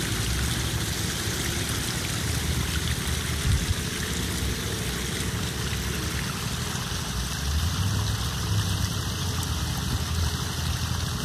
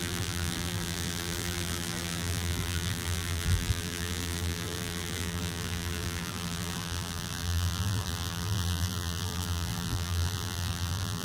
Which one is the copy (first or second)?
second